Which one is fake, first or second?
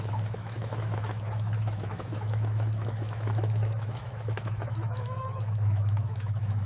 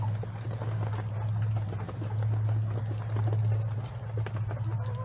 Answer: first